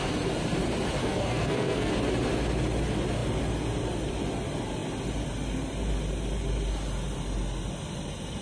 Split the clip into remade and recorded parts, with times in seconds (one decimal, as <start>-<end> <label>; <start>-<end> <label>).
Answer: 0.0-1.0 recorded; 1.0-1.9 remade; 1.9-8.4 recorded